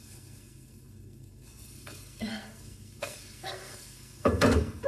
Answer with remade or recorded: remade